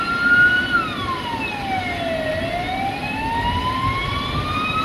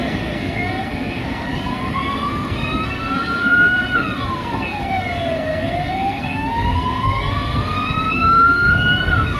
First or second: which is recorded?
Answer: first